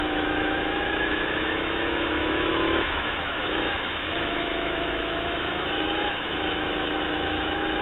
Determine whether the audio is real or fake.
fake